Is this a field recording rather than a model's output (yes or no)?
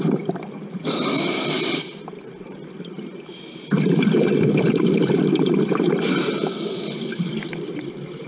no